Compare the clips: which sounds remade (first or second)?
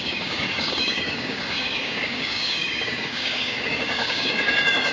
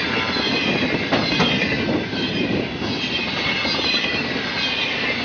first